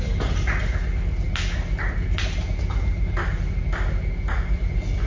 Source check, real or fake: real